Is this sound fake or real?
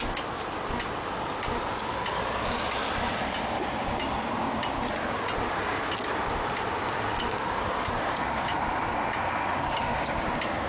real